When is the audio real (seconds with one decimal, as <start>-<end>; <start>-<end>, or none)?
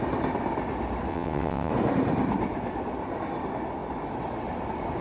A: 0.0-1.1; 1.7-5.0